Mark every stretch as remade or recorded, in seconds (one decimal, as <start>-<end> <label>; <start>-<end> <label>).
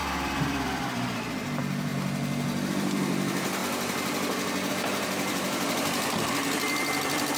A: 0.0-1.9 remade; 1.9-2.7 recorded; 2.7-3.6 remade; 3.6-4.7 recorded; 4.7-7.4 remade